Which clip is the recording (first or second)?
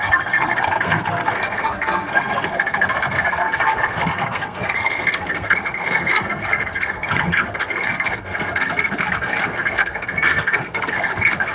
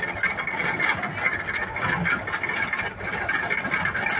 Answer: second